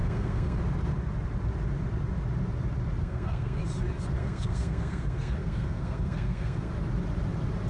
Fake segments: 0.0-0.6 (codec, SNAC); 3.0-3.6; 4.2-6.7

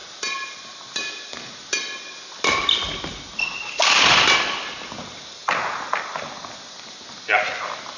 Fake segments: none

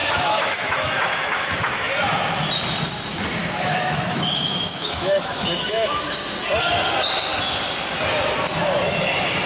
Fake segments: 0.0-1.9 (autoencoder, DAC-VAE); 3.4-6.0

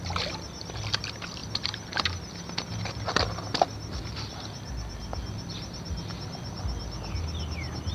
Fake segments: none

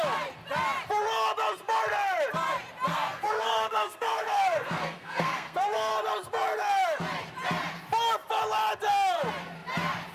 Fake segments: 2.9-5.9 (codec, SNAC)

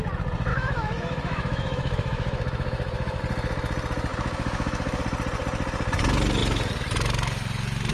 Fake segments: 0.5-3.2 (autoencoder, DAC-VAE); 4.1-5.0

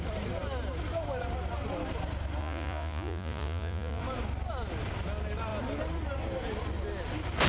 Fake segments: 2.4-4.0 (vocoder, Vocos)

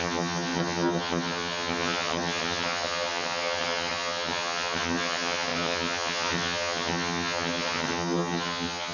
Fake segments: 0.0-8.9 (vocoder, HiFi-GAN)